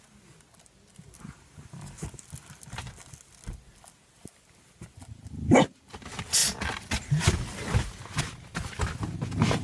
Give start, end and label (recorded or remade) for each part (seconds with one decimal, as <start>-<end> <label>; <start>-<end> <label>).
0.0-9.6 recorded